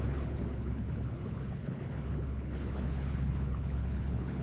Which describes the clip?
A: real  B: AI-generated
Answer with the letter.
B